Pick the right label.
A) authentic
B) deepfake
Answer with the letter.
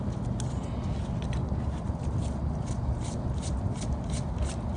A